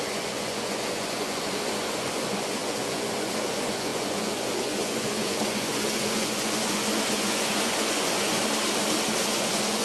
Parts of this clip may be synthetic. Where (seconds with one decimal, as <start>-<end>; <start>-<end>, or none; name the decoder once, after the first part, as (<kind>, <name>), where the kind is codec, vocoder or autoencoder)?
0.0-8.4 (vocoder, Vocos); 9.2-9.8

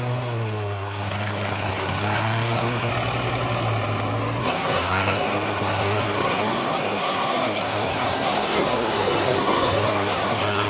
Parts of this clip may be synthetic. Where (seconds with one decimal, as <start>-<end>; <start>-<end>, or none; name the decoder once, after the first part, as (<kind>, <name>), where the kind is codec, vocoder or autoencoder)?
0.0-2.9 (codec, SNAC); 4.4-10.7